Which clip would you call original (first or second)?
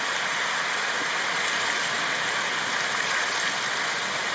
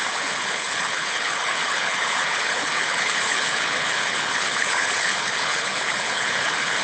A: first